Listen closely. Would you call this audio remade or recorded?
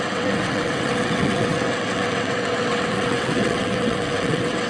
remade